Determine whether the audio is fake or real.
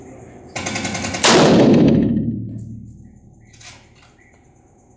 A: real